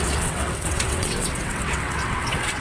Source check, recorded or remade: remade